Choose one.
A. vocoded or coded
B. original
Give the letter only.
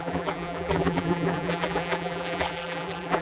A